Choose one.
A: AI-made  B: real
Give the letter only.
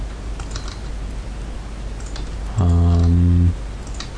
B